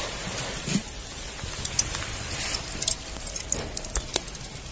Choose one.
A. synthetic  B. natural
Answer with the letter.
B